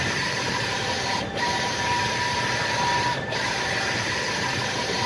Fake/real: fake